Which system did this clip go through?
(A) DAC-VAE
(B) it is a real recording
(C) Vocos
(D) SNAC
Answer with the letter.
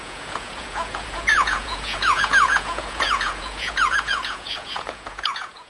C